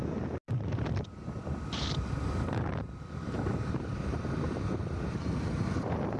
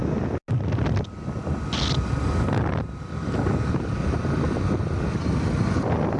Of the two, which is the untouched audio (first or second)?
second